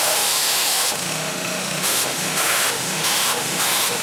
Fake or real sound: fake